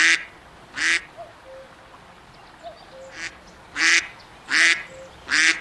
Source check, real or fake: real